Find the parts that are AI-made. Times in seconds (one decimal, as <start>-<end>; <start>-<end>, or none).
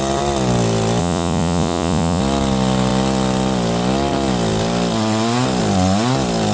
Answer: 1.0-2.2